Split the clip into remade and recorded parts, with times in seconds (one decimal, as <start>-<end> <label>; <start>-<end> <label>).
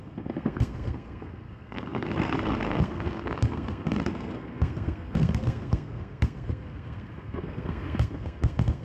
0.0-8.8 remade